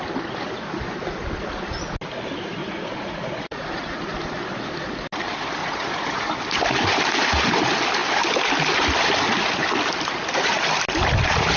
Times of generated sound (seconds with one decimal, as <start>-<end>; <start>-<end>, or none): 2.6-4.0; 5.6-6.3